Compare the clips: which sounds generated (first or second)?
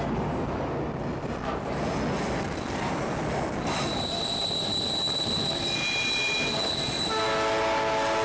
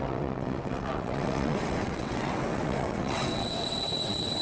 second